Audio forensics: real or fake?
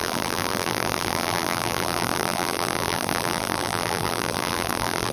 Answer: fake